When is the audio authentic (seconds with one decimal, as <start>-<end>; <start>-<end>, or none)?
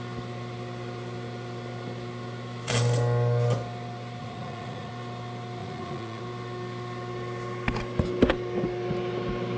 0.0-4.2; 4.9-5.6; 6.2-9.6